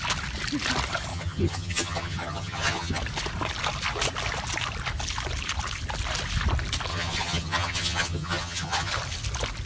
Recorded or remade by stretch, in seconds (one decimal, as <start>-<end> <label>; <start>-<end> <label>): 0.0-1.1 recorded; 1.1-3.0 remade; 3.0-6.9 recorded; 6.9-8.9 remade; 8.9-9.7 recorded